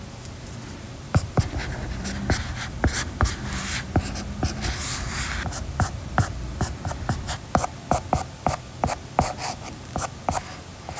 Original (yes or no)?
yes